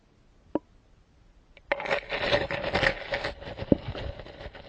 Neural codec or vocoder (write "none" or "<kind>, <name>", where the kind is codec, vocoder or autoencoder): none